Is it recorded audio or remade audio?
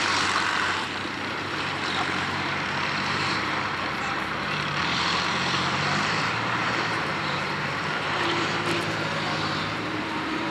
remade